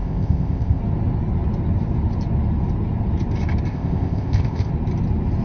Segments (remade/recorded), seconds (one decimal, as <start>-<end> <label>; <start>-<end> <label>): 0.0-0.8 remade; 0.8-3.7 recorded; 3.7-4.7 remade; 4.7-5.4 recorded

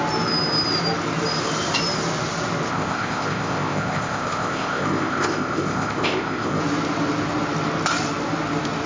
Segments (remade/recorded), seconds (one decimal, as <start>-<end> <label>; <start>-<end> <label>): 0.0-2.7 recorded; 2.7-6.6 remade; 6.6-8.9 recorded

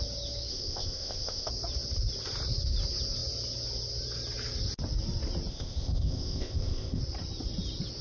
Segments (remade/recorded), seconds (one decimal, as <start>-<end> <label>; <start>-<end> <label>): 0.0-0.5 recorded; 0.5-1.5 remade; 1.5-5.5 recorded; 5.5-7.0 remade; 7.0-8.0 recorded

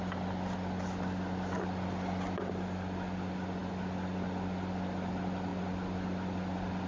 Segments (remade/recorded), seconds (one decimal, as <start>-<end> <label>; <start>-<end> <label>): 0.0-6.9 recorded

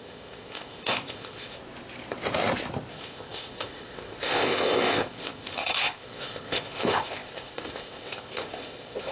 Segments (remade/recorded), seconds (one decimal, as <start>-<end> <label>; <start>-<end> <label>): 0.0-1.6 remade; 1.6-2.9 recorded; 2.9-9.1 remade

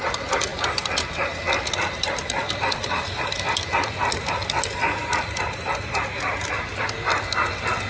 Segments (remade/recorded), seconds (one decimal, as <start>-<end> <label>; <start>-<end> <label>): 0.0-7.9 recorded